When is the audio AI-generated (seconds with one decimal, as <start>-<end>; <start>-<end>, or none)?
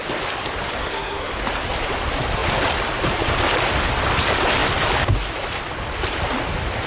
0.8-1.3